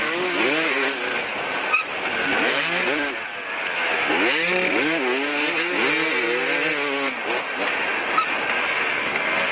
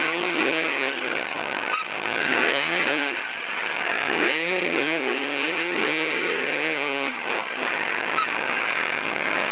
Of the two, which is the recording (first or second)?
first